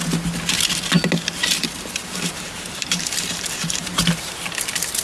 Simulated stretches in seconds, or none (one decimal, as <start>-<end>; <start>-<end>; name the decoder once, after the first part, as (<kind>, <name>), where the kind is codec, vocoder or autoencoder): 1.4-4.4 (vocoder, BigVGAN v2)